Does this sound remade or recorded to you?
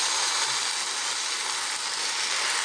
recorded